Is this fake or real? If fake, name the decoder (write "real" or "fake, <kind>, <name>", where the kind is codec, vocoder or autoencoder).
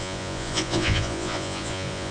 fake, vocoder, Vocos